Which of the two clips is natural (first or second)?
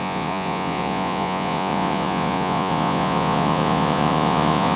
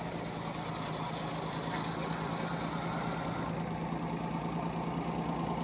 second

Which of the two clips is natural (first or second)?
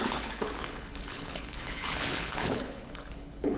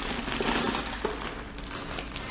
second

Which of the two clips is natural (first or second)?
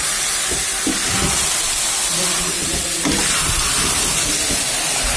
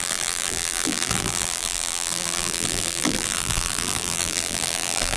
first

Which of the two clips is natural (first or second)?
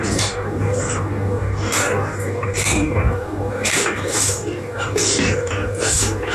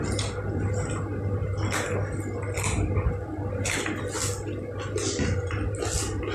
second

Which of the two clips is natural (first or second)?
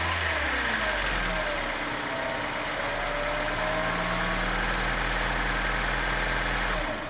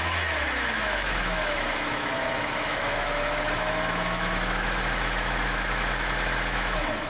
first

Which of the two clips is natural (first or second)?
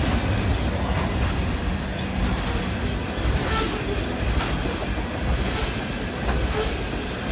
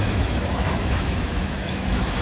first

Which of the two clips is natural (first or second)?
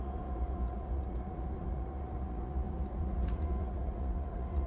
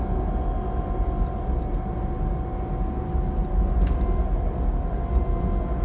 second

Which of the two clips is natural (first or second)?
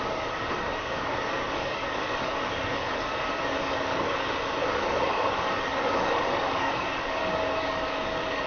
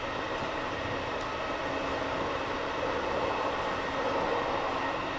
second